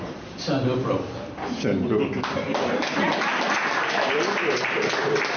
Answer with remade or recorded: remade